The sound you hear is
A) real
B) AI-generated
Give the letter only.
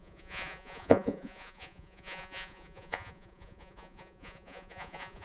B